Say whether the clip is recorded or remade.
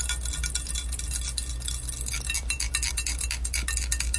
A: recorded